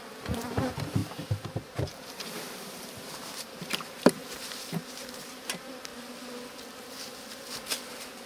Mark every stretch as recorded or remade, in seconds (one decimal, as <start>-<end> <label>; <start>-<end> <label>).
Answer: 0.0-5.9 remade; 5.9-7.9 recorded; 7.9-8.3 remade